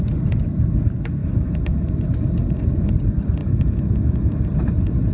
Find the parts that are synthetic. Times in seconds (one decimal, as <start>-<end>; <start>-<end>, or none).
1.2-1.9; 3.4-4.4